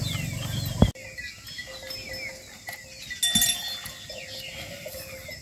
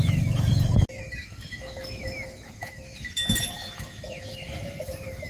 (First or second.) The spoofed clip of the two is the second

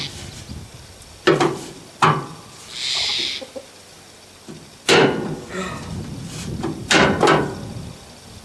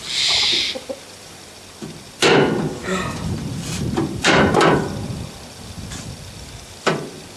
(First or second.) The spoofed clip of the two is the second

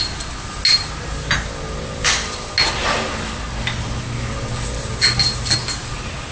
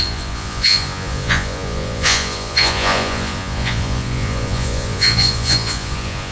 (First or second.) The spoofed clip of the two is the second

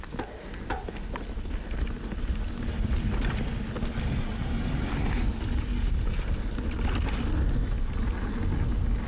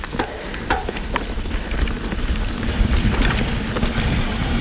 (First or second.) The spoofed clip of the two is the second